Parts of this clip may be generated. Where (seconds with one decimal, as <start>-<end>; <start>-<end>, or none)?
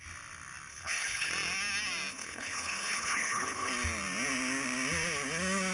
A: 0.7-1.3; 2.1-3.7